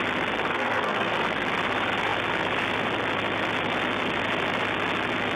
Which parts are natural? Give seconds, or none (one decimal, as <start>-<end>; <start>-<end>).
0.0-0.5; 1.1-5.4